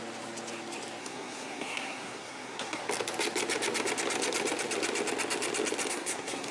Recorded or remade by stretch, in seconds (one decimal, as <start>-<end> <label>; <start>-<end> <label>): 0.0-1.0 recorded; 1.0-2.8 remade; 2.8-5.9 recorded; 5.9-6.5 remade